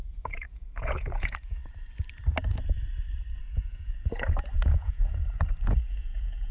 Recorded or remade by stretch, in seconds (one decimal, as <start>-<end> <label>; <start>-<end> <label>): 0.0-1.6 remade; 1.6-3.4 recorded; 3.4-6.5 remade